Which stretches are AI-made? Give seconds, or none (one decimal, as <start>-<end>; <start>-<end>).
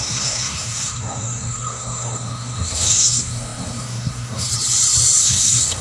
0.0-4.5; 5.2-5.8